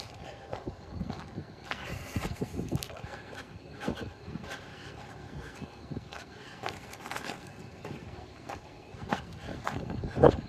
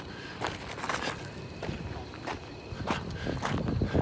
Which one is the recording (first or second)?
second